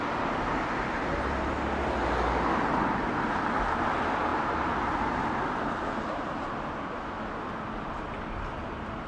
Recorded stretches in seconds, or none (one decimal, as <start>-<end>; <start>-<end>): 0.0-4.3; 6.5-9.1